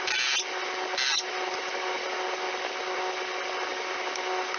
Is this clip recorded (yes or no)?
yes